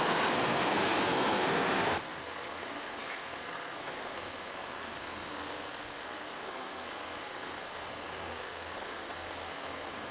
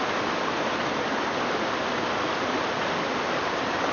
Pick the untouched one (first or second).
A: second